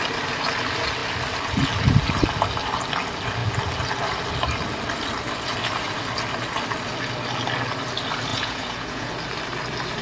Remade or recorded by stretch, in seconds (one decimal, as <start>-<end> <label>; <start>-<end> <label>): 0.0-8.3 recorded; 8.3-9.1 remade; 9.1-10.0 recorded